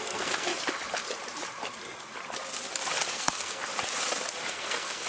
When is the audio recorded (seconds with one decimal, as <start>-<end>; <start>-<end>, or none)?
0.5-3.1; 3.7-4.5